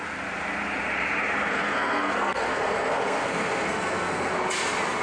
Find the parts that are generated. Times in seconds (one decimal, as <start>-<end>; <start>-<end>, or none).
1.5-4.3